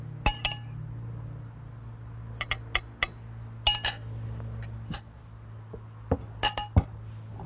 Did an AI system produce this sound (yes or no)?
no